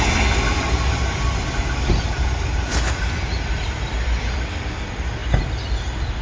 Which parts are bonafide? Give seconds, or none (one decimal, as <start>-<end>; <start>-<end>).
0.0-6.2